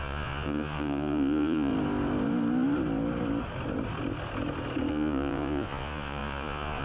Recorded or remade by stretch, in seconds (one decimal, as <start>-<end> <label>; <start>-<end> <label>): 0.0-1.7 remade; 1.7-4.9 recorded; 4.9-6.8 remade